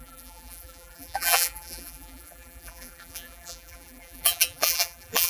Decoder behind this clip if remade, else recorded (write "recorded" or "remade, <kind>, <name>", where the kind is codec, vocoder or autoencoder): remade, vocoder, BigVGAN v2